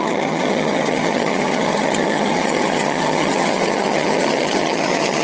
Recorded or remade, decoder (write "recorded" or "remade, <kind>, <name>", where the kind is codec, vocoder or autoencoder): remade, vocoder, HiFi-GAN